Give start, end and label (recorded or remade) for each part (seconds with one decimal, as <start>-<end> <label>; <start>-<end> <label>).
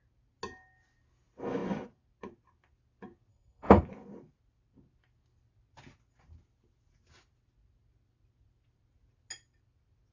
0.0-3.3 recorded; 3.3-3.8 remade; 3.8-10.1 recorded